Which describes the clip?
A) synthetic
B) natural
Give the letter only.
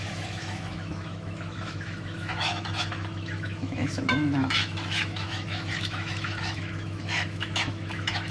A